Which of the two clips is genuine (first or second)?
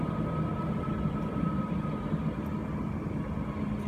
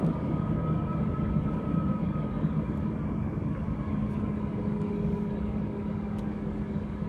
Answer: first